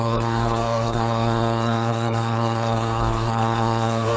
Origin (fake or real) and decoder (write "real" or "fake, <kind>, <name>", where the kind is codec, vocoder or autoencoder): fake, codec, SNAC